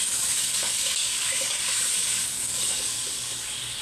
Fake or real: fake